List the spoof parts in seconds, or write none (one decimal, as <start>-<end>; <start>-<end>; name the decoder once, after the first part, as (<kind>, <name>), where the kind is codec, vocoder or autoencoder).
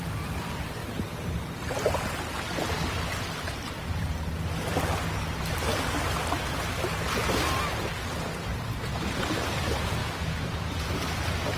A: 10.0-10.6 (autoencoder, DAC-VAE)